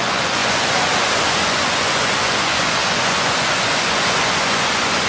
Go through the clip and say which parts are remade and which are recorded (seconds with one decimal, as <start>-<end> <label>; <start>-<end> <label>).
0.0-5.1 remade